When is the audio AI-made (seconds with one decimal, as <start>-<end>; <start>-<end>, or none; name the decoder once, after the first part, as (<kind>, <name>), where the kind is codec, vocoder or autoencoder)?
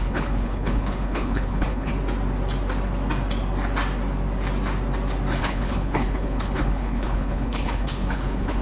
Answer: 0.0-1.9 (codec, HILCodec); 5.4-8.6